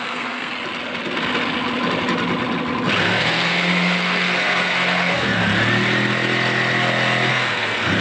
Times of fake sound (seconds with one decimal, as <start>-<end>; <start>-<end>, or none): 0.0-0.5; 3.0-5.4; 7.3-8.0

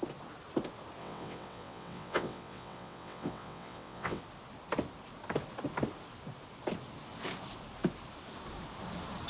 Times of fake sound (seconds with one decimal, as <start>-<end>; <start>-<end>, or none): 1.0-4.2

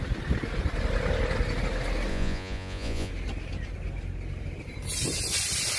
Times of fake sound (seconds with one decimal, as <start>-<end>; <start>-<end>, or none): 2.1-3.1

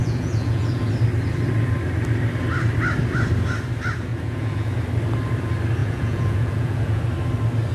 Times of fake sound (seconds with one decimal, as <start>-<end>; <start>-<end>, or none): 0.0-0.9; 4.1-4.7; 5.8-7.0

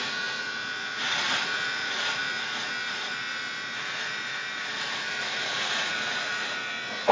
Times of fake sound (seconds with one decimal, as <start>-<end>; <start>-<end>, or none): 0.0-7.1

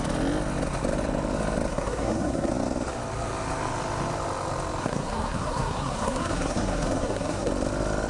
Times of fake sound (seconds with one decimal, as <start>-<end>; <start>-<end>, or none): 1.7-2.5; 4.8-7.5

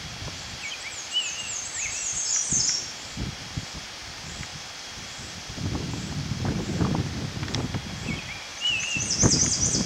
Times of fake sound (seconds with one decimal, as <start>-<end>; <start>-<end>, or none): 4.5-7.2; 8.5-9.0